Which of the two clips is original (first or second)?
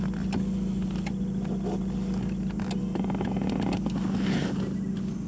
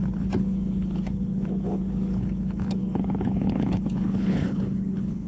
first